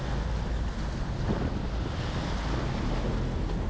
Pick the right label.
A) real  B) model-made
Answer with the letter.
A